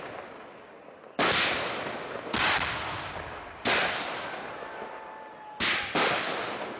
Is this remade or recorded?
recorded